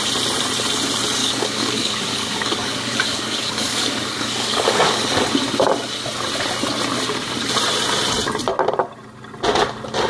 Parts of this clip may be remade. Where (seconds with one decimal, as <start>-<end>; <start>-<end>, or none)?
1.2-5.0